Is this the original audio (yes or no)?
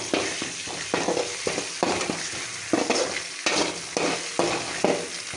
yes